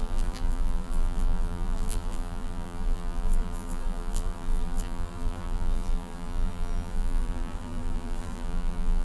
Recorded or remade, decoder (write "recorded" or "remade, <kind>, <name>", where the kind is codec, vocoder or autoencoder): remade, vocoder, BigVGAN v2